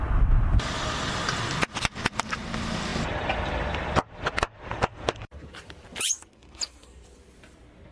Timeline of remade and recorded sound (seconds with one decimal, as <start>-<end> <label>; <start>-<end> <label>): 0.0-2.9 remade; 2.9-4.9 recorded; 4.9-7.9 remade